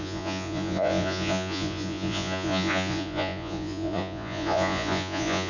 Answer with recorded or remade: remade